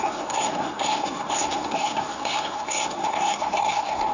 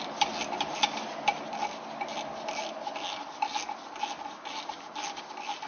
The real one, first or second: second